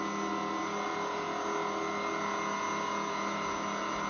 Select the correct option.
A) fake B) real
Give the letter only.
B